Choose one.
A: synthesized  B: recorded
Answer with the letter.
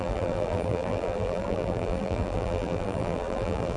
A